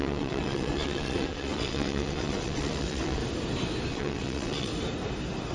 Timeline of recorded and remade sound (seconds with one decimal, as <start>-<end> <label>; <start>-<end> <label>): 0.0-3.2 remade; 3.2-3.9 recorded; 3.9-4.7 remade; 4.7-5.5 recorded